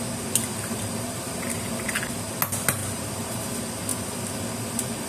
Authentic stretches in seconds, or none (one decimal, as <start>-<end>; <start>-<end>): 0.0-0.5; 2.0-2.8; 3.4-5.1